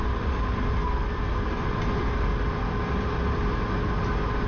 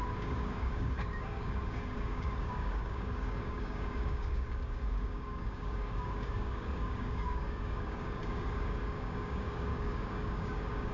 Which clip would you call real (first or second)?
first